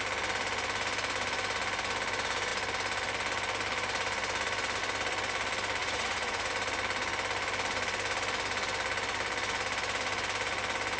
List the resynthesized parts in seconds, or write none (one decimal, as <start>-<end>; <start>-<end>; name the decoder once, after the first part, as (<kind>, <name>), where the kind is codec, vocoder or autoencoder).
5.8-6.5 (vocoder, Vocos)